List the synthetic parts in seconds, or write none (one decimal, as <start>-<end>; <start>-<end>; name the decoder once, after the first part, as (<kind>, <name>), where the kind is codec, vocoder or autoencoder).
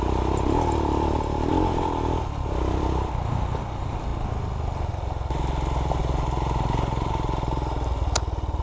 none